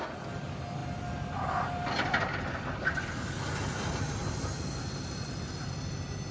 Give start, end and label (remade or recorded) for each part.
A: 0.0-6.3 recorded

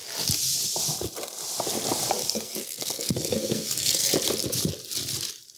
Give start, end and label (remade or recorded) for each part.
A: 0.0-2.2 recorded; 2.2-4.1 remade; 4.1-5.6 recorded

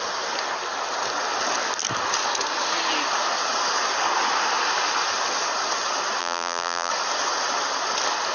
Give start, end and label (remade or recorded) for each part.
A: 0.0-6.2 recorded; 6.2-6.9 remade; 6.9-8.3 recorded